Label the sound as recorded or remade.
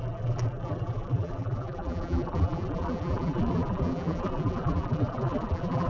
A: remade